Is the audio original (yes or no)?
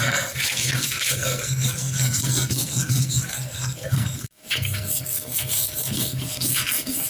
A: no